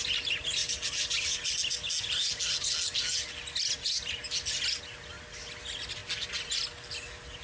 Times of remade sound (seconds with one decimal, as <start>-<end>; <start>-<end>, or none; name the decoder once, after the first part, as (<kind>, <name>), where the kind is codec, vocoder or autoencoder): none

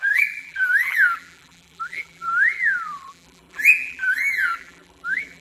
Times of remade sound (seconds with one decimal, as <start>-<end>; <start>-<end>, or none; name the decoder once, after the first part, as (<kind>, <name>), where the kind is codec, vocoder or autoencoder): 0.0-5.4 (vocoder, BigVGAN v2)